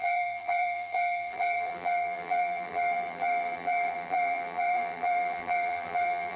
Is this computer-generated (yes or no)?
yes